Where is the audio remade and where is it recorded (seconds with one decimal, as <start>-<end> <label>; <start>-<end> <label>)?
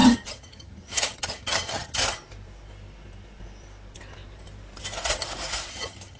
0.0-2.0 remade; 2.0-5.7 recorded; 5.7-6.2 remade